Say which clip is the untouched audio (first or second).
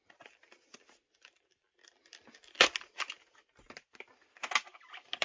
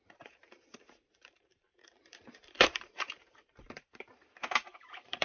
first